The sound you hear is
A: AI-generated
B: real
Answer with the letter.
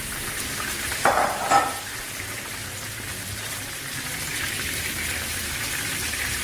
A